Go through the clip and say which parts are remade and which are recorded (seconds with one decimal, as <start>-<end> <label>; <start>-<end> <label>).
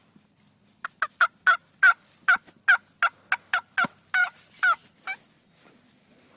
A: 0.0-4.2 recorded; 4.2-4.9 remade; 4.9-6.4 recorded